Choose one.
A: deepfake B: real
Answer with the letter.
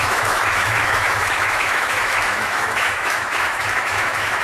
A